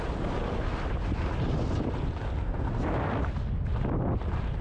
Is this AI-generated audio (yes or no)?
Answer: no